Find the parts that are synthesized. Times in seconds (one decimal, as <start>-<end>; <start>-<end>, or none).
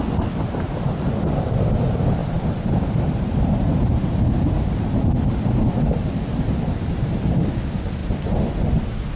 2.2-7.2